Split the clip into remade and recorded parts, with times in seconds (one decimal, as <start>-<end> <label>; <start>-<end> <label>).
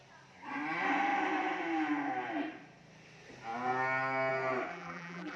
0.0-4.7 recorded; 4.7-5.4 remade